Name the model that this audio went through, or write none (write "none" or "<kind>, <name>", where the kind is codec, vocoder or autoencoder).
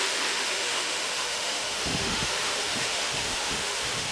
autoencoder, DAC-VAE